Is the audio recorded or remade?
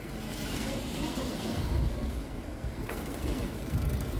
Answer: remade